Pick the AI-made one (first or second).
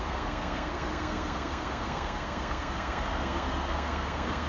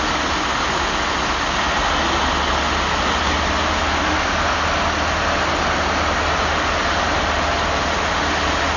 first